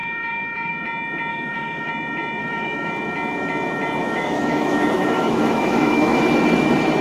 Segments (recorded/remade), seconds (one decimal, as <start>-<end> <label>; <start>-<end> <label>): 0.0-0.7 remade; 0.7-1.3 recorded; 1.3-1.9 remade; 1.9-2.4 recorded; 2.4-2.9 remade; 2.9-4.0 recorded; 4.0-6.2 remade; 6.2-7.0 recorded